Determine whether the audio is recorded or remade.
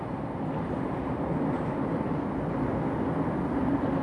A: recorded